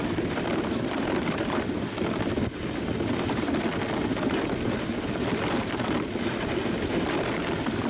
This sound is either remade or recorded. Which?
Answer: recorded